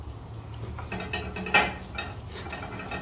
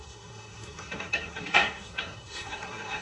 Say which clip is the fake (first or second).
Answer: second